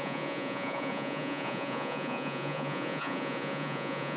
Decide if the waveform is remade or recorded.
remade